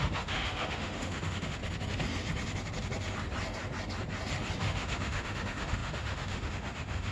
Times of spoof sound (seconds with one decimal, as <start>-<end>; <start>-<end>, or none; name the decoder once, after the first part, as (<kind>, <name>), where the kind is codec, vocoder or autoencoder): 0.0-1.6 (autoencoder, DAC-VAE); 4.6-7.1

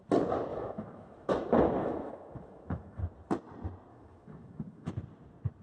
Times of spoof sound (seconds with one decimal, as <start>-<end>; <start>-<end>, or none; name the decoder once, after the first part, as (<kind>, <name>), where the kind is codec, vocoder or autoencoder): 0.5-1.3 (autoencoder, DAC-VAE); 1.8-3.0; 3.9-4.9

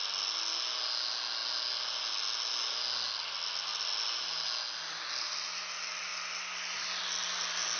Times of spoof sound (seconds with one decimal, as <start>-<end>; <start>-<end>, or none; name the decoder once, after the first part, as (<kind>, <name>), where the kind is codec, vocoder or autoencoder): none

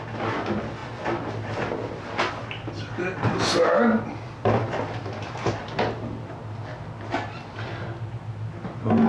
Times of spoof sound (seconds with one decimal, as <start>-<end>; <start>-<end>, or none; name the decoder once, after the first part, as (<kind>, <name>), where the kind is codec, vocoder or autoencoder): none

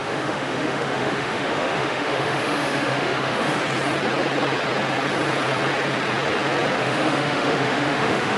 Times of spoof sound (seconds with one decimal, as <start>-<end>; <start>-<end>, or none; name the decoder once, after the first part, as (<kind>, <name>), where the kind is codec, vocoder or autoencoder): 0.0-3.6 (autoencoder, DAC-VAE); 6.8-8.4

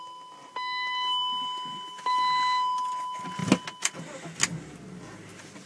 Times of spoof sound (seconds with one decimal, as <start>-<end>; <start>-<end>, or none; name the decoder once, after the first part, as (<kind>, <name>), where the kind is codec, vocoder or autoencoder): none